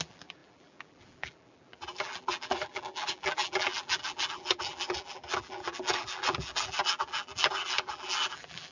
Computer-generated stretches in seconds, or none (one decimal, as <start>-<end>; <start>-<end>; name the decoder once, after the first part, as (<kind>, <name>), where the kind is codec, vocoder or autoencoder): 0.0-8.7 (vocoder, BigVGAN v2)